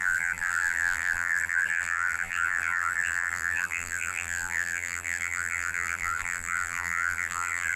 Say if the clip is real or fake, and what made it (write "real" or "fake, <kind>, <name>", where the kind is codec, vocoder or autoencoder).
fake, vocoder, BigVGAN v2